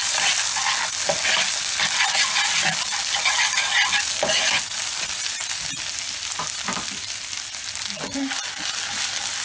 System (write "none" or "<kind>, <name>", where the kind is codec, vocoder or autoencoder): none